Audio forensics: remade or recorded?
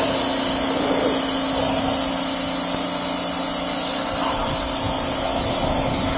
recorded